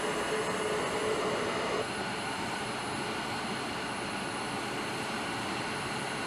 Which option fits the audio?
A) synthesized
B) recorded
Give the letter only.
B